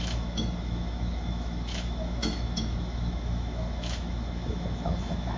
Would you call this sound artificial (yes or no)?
yes